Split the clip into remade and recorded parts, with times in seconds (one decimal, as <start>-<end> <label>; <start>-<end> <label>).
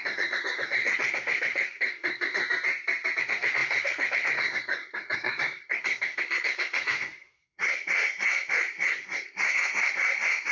0.0-2.4 remade; 2.4-3.2 recorded; 3.2-10.5 remade